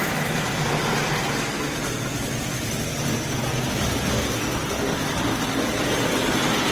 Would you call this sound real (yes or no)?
yes